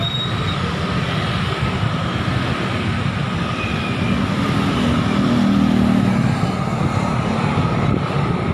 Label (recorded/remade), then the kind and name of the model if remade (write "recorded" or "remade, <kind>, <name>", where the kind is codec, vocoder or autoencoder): recorded